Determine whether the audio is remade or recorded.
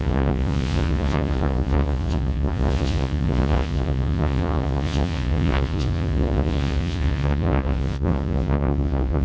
remade